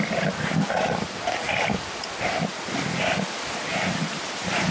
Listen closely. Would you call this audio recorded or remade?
recorded